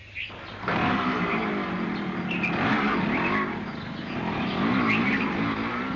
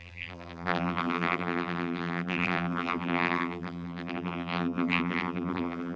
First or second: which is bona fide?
first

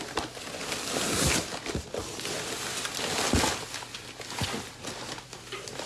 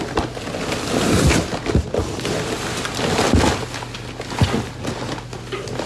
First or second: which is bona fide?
second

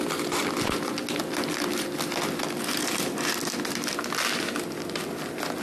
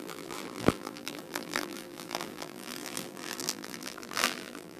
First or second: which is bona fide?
first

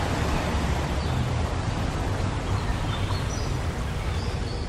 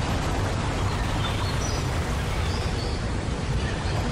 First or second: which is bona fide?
first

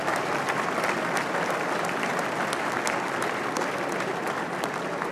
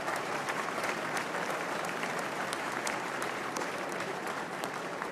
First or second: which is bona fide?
first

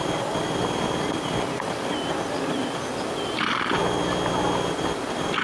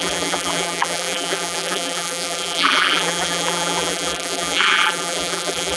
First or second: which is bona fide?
first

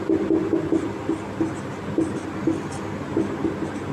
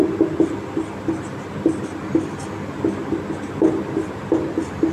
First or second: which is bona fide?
first